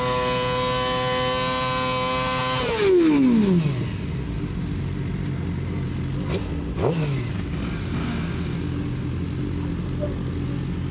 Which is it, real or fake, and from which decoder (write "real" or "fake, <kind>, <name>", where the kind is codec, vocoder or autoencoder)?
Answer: real